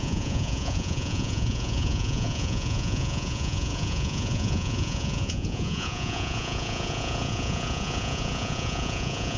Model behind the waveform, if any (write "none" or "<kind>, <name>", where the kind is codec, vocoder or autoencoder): vocoder, Vocos